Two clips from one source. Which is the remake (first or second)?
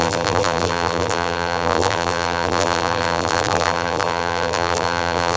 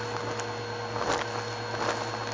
first